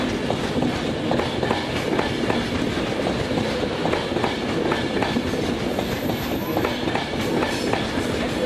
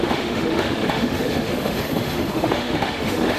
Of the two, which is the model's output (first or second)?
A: second